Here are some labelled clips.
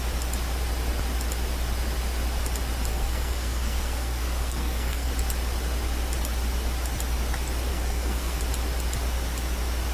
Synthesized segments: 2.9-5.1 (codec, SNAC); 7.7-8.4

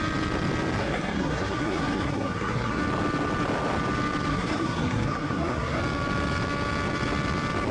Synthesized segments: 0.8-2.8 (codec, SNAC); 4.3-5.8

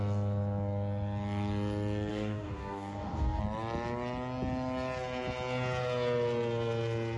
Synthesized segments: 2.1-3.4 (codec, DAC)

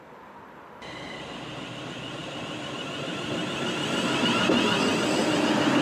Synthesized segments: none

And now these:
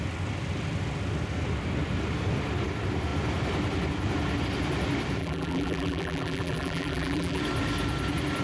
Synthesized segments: 5.2-7.4 (vocoder, BigVGAN v2)

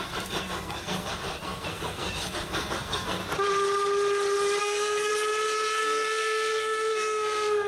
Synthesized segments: 0.0-3.2 (codec, SNAC); 4.6-5.1; 5.8-7.7

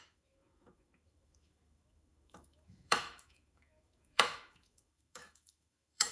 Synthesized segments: 0.0-6.1 (autoencoder, DAC-VAE)